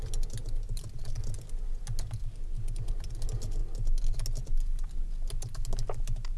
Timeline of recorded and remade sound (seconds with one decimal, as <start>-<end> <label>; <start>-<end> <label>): 0.0-6.4 recorded